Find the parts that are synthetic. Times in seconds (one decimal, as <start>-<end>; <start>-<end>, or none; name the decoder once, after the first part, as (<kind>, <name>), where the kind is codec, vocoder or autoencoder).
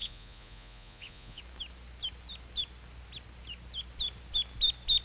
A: 0.0-1.4 (vocoder, Vocos)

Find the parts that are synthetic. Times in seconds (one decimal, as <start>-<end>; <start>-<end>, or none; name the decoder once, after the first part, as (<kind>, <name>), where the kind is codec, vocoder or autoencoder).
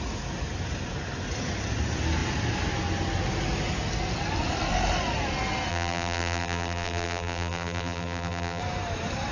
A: 5.7-8.6 (vocoder, BigVGAN v2)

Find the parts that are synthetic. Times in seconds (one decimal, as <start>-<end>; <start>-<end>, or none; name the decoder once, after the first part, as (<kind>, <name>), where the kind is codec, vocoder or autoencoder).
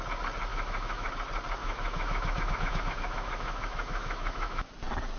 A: 0.5-1.1 (autoencoder, DAC-VAE); 1.6-4.7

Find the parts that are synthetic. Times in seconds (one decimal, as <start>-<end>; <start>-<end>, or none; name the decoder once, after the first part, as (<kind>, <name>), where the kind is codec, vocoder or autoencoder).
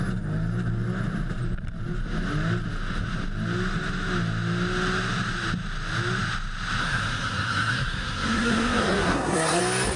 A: 6.8-9.6 (codec, SNAC)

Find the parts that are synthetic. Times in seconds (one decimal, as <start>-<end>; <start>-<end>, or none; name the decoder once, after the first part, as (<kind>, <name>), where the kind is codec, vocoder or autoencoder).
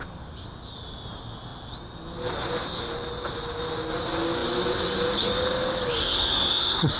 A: 6.0-7.0 (codec, SNAC)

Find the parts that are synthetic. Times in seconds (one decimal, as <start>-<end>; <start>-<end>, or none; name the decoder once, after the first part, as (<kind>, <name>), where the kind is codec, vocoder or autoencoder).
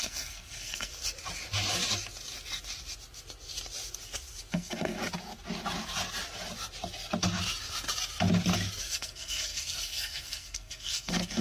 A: 0.0-0.9 (codec, SNAC); 4.5-5.0; 8.8-11.4